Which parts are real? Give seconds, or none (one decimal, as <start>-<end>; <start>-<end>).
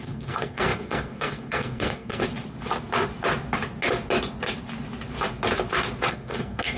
2.2-6.1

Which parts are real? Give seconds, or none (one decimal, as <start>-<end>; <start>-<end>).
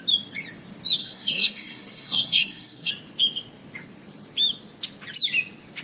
0.0-1.0; 2.9-5.8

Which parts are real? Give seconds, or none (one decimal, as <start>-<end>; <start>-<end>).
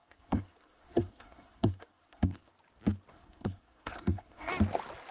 2.5-3.1; 4.5-5.1